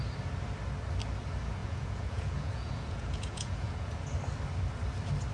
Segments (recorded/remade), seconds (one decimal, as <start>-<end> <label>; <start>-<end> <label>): 0.0-1.6 recorded; 1.6-3.9 remade; 3.9-5.3 recorded